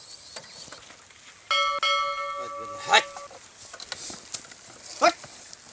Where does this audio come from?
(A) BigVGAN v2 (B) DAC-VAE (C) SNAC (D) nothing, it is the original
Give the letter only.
D